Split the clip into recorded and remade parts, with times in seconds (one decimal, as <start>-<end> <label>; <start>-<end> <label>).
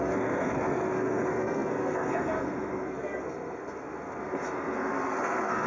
0.0-5.7 remade